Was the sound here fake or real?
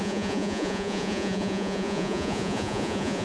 fake